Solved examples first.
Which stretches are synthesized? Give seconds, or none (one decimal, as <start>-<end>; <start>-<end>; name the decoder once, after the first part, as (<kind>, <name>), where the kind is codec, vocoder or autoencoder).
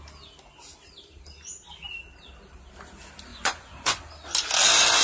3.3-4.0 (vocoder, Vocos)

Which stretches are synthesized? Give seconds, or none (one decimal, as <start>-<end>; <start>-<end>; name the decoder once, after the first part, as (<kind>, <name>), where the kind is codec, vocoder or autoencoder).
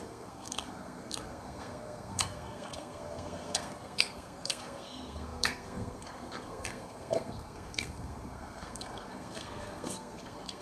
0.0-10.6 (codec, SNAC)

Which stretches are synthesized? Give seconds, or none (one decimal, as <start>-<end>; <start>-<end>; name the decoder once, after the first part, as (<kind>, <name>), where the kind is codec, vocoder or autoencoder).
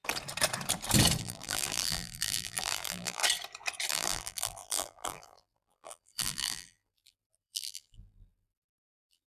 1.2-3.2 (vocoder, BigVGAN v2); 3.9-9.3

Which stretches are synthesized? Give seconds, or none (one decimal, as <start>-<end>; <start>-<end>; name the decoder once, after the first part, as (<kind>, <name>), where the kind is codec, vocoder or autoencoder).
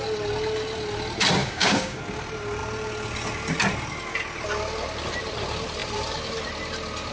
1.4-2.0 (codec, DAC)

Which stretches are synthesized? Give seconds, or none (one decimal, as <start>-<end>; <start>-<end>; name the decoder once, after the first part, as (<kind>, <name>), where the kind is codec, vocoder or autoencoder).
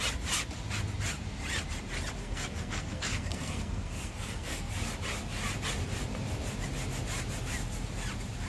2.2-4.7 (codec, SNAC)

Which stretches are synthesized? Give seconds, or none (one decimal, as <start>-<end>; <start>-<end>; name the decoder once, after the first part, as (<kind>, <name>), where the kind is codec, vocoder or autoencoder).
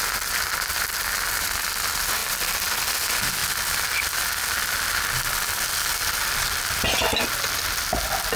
none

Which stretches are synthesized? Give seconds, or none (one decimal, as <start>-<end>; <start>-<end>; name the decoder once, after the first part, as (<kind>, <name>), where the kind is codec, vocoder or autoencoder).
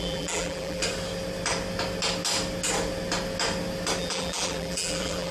0.0-0.8 (vocoder, BigVGAN v2); 4.0-5.3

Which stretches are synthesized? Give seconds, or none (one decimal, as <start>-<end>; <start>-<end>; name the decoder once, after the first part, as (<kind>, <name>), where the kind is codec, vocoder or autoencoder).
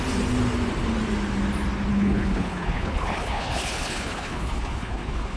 1.9-5.4 (codec, HILCodec)